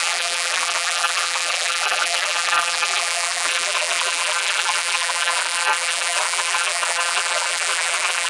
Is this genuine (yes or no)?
no